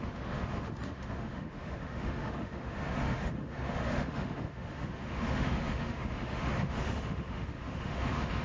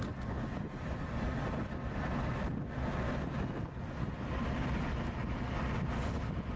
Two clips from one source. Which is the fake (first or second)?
first